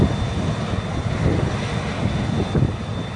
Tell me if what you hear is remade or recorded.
recorded